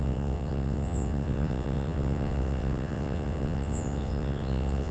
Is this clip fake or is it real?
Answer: fake